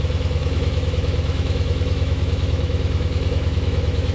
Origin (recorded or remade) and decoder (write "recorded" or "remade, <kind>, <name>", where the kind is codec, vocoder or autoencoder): remade, autoencoder, DAC-VAE